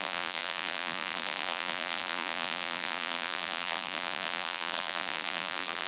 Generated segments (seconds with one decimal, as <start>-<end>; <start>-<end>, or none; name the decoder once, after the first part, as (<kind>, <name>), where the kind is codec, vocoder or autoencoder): 0.0-5.9 (vocoder, BigVGAN v2)